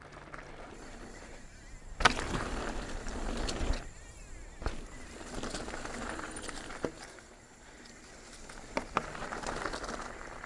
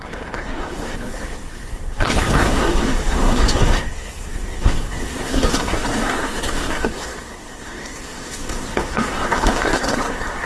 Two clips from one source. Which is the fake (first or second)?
second